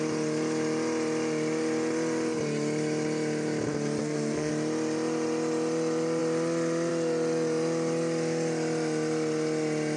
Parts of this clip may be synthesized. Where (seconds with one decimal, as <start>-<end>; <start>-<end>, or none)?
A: 4.0-4.5